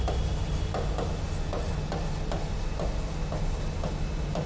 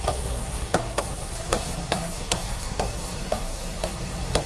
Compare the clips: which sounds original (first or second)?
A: first